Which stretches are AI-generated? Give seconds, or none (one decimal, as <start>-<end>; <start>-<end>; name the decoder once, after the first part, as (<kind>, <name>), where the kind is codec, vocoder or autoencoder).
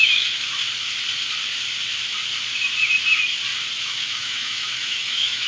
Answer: 0.0-0.6 (autoencoder, DAC-VAE); 3.8-5.5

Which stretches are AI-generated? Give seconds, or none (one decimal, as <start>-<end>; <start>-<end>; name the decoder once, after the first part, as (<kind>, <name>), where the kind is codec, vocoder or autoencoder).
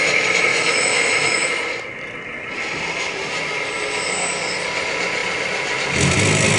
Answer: 0.5-1.5 (autoencoder, DAC-VAE)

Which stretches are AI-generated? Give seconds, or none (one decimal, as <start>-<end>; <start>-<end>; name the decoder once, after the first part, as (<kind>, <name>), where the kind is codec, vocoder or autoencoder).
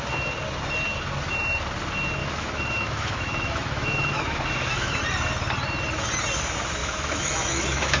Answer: 2.2-5.0 (autoencoder, DAC-VAE); 6.8-8.0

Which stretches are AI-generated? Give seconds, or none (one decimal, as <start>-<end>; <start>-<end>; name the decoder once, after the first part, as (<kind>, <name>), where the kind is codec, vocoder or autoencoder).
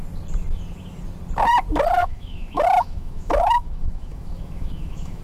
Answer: 2.0-5.2 (autoencoder, DAC-VAE)